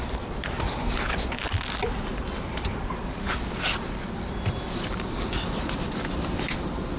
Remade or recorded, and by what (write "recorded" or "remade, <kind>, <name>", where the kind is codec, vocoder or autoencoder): recorded